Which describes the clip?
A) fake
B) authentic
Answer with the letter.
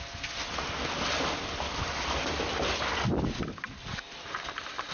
B